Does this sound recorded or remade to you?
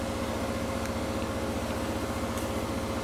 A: recorded